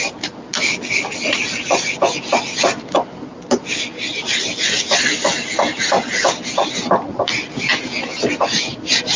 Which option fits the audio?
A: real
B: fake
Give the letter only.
A